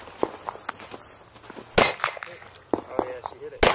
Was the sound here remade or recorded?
recorded